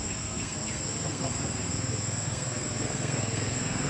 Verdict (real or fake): fake